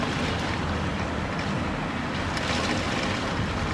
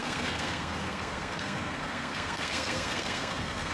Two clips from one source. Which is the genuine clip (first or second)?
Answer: first